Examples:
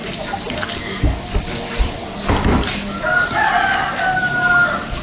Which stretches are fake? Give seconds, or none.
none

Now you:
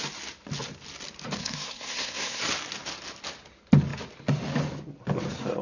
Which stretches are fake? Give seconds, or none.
1.4-2.4 (codec, SNAC)

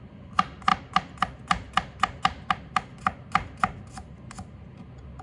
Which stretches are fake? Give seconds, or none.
none

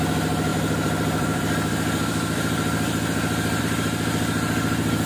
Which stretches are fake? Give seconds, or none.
0.5-3.6 (vocoder, BigVGAN v2)

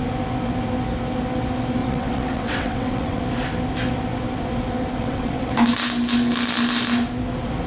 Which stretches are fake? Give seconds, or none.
1.8-3.2 (vocoder, WaveNeXt); 5.0-5.5

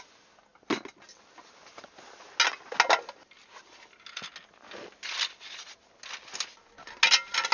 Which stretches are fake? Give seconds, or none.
none

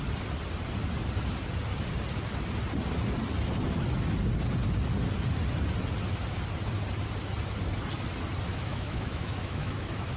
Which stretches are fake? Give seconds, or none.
8.5-10.2 (autoencoder, DAC-VAE)